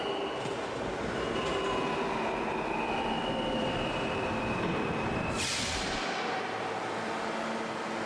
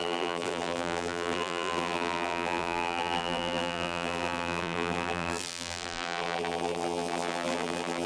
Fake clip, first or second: second